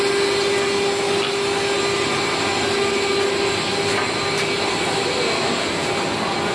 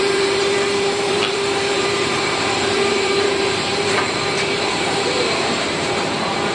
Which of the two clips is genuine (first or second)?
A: first